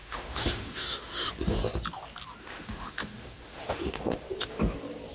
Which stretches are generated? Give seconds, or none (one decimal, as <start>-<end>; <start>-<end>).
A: 0.0-1.3; 2.4-4.6